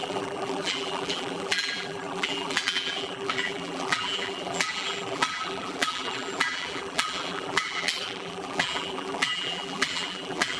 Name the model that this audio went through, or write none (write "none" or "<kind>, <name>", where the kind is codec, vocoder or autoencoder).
vocoder, BigVGAN v2